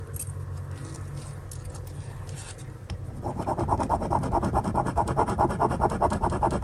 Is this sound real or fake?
real